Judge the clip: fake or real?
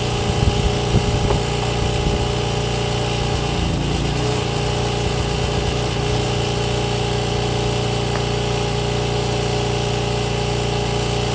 real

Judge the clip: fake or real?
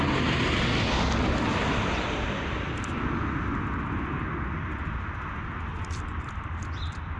real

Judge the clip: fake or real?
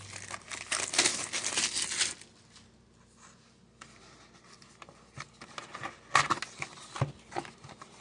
real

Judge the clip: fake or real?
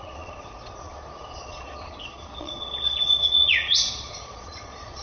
fake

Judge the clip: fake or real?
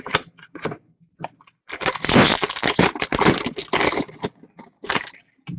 real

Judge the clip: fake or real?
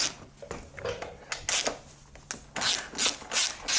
real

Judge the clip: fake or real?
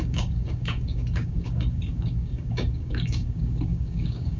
fake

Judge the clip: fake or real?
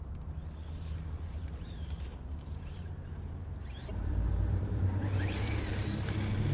fake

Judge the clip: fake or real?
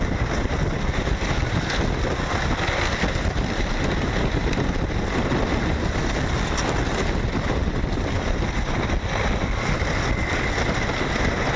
real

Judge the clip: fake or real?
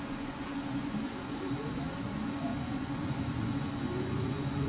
fake